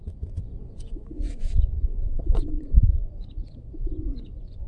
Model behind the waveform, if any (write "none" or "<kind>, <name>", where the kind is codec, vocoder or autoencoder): vocoder, Vocos